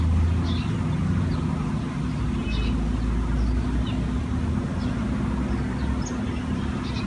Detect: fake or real real